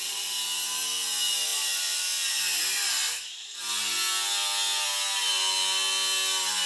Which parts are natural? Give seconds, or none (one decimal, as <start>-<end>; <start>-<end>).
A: 0.0-6.7